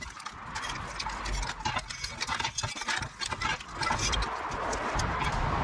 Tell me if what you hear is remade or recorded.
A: recorded